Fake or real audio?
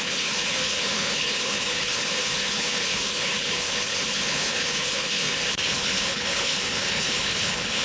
fake